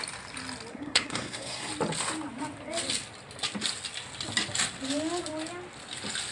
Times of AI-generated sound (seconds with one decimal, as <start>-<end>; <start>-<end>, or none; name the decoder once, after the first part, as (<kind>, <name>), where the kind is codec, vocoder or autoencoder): 0.7-1.7 (codec, SNAC)